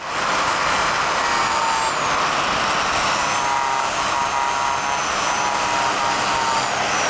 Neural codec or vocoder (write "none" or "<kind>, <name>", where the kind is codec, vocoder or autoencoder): none